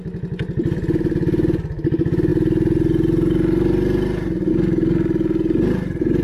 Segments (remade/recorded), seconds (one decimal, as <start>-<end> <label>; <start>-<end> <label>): 0.0-6.2 recorded